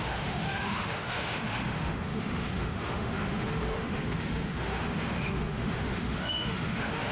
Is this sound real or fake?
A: fake